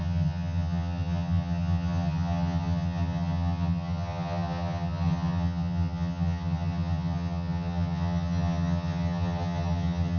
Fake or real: fake